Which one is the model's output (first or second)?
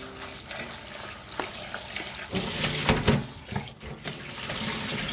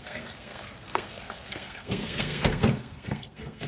second